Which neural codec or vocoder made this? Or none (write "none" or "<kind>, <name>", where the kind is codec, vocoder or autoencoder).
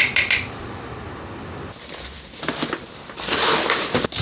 vocoder, BigVGAN v2